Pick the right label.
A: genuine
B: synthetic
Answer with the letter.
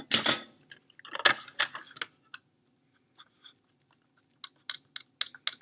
A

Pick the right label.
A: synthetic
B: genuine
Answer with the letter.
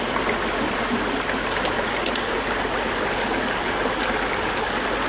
B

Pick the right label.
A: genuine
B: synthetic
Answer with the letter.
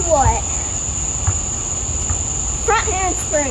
A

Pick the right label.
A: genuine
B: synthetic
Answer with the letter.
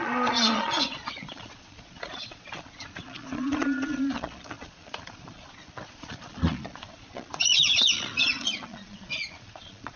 B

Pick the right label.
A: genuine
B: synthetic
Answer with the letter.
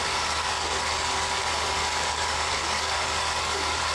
B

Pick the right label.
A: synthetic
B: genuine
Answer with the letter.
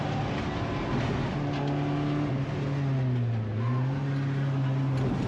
B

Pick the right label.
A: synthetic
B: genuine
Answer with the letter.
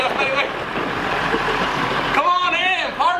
A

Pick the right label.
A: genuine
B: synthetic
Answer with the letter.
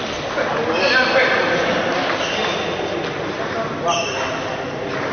A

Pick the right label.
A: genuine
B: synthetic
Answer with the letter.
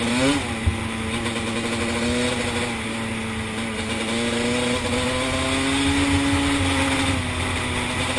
A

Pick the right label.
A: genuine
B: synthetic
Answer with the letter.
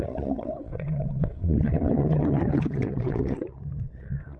B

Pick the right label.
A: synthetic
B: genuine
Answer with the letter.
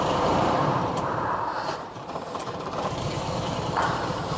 A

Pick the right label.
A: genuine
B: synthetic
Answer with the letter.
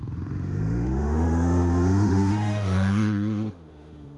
B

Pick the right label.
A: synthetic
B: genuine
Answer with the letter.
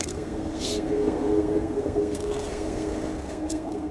A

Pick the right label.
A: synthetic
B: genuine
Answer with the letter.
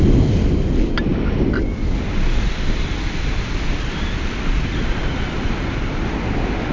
B